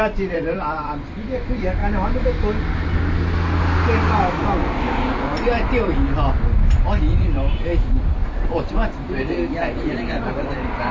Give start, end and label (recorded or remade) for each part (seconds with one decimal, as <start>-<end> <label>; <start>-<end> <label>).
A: 0.0-1.8 remade; 1.8-7.0 recorded; 7.0-10.9 remade